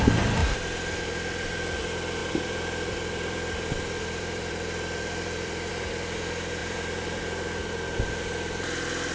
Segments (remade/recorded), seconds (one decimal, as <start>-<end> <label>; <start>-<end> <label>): 0.0-0.4 recorded; 0.4-1.8 remade; 1.8-2.2 recorded; 2.2-5.7 remade; 5.7-6.6 recorded; 6.6-7.2 remade; 7.2-9.1 recorded

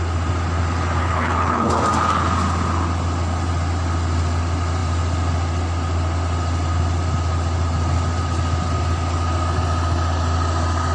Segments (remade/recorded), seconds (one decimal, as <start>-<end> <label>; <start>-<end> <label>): 0.0-1.0 recorded; 1.0-1.7 remade; 1.7-10.9 recorded

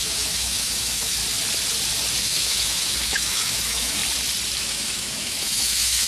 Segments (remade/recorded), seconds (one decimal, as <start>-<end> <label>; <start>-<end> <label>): 0.0-1.2 remade; 1.2-2.2 recorded; 2.2-4.0 remade; 4.0-4.6 recorded; 4.6-6.1 remade